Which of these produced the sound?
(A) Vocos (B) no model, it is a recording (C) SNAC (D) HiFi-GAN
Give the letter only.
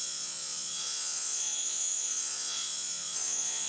A